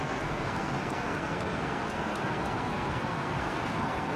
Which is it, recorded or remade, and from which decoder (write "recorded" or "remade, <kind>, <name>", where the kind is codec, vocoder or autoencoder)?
remade, codec, SNAC